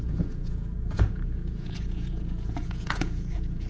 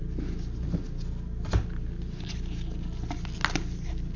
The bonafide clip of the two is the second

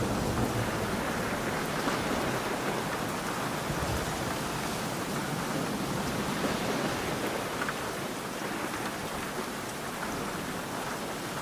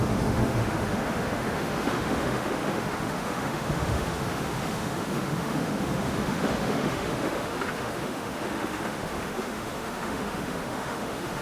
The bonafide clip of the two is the first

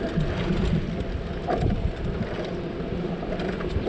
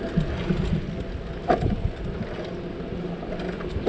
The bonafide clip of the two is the second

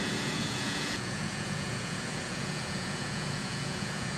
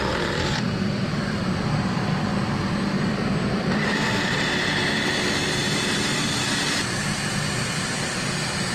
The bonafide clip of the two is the second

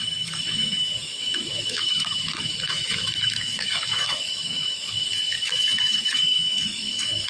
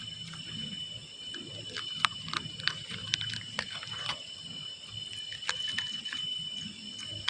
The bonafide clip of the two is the second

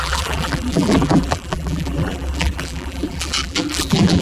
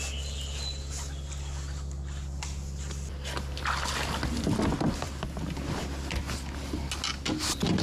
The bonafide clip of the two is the second